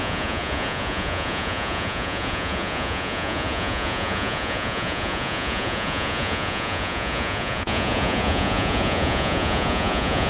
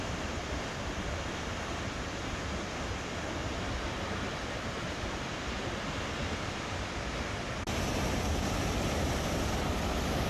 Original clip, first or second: second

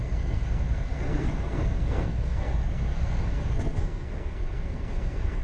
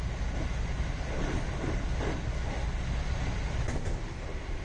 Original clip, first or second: second